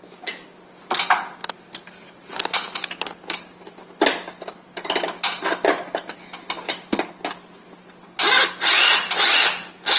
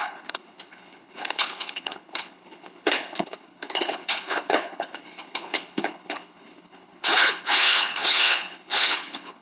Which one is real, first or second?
first